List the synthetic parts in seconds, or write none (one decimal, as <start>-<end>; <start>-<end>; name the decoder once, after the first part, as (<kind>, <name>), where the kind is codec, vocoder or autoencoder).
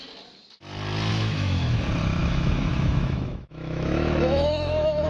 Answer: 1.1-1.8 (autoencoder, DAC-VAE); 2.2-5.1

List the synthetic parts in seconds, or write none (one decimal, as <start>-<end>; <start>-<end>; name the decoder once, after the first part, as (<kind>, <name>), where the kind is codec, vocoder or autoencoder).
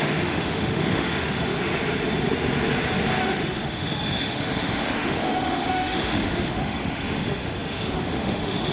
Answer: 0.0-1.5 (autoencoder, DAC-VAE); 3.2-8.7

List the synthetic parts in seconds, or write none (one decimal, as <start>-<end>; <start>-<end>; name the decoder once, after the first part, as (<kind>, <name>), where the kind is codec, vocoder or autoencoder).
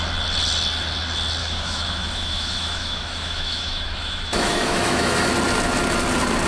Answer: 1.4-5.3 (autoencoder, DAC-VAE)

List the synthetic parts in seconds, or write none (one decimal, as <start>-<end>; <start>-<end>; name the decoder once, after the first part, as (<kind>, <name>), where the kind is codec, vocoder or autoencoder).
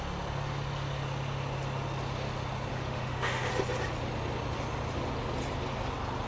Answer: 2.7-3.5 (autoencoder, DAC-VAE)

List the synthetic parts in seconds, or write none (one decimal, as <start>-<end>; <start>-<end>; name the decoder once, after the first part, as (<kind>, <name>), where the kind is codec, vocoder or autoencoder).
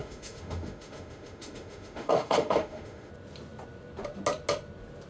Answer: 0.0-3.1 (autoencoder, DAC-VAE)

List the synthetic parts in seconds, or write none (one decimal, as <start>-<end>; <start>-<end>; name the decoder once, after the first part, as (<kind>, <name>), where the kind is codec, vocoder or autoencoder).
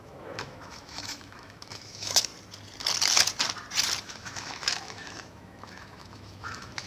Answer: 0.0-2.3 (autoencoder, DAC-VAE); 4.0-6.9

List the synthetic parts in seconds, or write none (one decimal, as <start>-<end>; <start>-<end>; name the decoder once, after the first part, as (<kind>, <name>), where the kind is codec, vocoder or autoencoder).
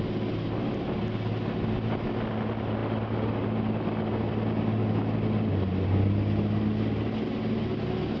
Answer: none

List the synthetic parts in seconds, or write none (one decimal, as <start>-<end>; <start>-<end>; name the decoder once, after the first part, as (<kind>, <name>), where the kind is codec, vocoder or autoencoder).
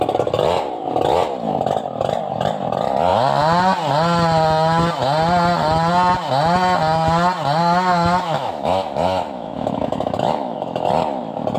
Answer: 7.6-10.9 (autoencoder, DAC-VAE)